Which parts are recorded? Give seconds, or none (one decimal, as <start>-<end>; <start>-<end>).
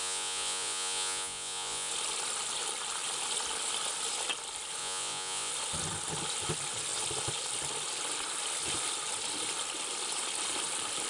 1.9-4.8; 5.5-11.1